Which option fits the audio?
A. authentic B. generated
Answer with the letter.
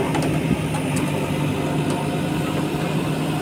A